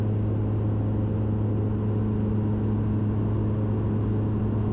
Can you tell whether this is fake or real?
real